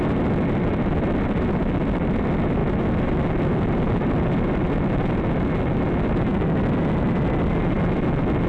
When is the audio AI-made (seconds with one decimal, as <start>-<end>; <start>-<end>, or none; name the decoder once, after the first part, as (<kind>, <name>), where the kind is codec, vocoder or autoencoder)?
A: none